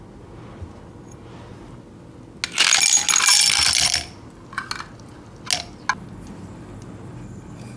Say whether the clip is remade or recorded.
recorded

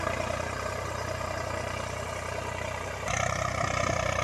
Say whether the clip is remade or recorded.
remade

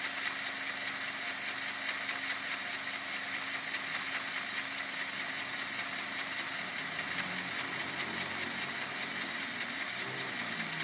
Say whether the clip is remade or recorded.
recorded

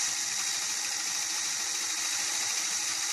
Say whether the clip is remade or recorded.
recorded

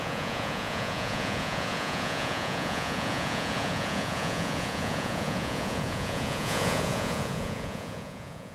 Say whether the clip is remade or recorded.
remade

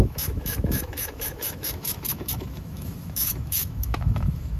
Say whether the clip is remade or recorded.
remade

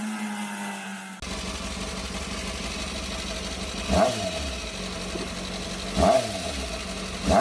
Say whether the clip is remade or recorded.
recorded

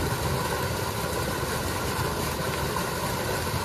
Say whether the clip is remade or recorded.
recorded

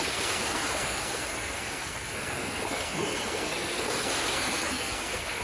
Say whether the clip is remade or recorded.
remade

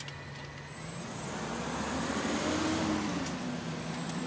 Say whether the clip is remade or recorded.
recorded